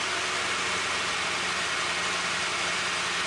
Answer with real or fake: real